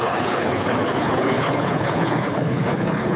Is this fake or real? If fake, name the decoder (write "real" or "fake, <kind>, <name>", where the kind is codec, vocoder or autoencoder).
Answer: fake, codec, HILCodec